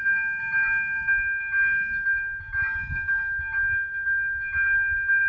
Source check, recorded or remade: recorded